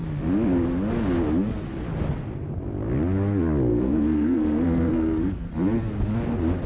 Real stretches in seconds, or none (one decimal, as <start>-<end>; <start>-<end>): 0.0-3.7; 5.5-6.7